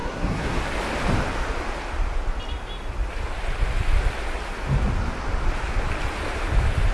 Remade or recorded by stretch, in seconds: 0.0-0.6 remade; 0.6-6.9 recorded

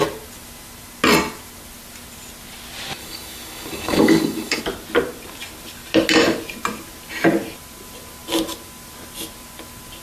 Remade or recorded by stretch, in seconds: 0.0-3.0 recorded; 3.0-4.6 remade; 4.6-10.0 recorded